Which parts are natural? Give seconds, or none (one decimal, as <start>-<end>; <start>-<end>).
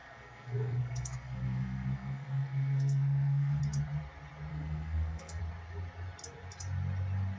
3.6-4.5; 5.4-7.4